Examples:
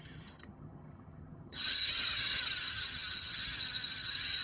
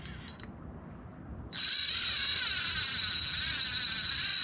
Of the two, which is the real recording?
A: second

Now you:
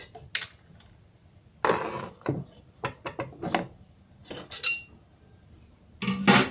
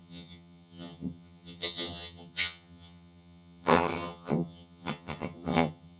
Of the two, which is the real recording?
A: first